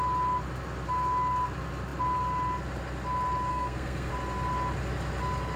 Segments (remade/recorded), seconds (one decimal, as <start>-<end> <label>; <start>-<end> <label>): 0.0-3.5 recorded; 3.5-4.1 remade; 4.1-5.6 recorded